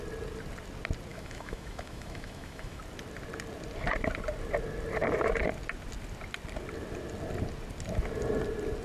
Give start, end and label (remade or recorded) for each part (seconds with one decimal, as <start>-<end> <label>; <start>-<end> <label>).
0.0-1.1 recorded; 1.1-2.8 remade; 2.8-8.8 recorded